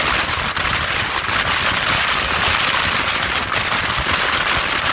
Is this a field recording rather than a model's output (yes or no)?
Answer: yes